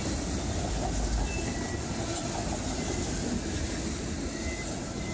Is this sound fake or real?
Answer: real